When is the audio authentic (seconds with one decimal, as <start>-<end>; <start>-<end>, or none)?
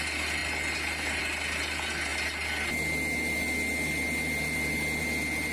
0.0-5.5